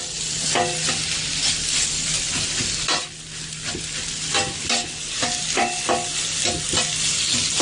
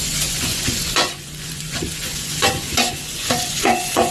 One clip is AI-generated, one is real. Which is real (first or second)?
first